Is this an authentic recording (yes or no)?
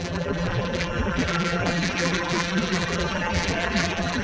no